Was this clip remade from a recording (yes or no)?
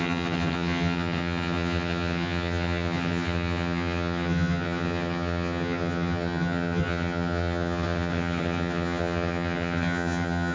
yes